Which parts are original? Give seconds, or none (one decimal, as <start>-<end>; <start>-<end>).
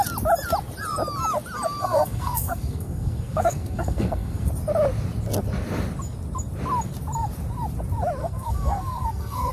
0.0-1.8; 4.5-8.2